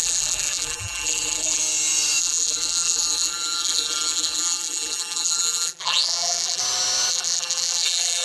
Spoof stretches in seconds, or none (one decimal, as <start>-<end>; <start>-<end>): 0.0-1.6; 2.2-6.6; 7.1-8.2